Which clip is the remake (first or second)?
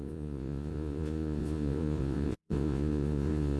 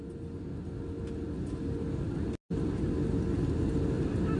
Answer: first